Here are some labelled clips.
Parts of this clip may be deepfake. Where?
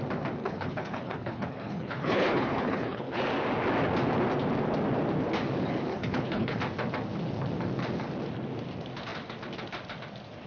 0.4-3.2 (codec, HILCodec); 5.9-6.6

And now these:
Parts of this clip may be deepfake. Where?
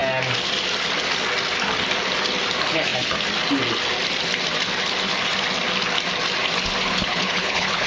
7.1-7.9 (codec, HILCodec)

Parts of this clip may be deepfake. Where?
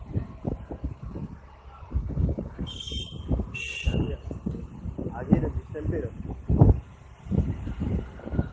2.0-2.9 (codec, HILCodec)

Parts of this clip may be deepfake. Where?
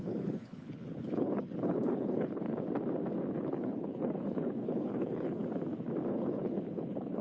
0.0-2.4 (codec, HILCodec); 3.3-5.4; 6.1-7.2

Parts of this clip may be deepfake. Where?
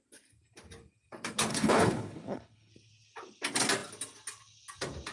1.5-2.7 (codec, HILCodec)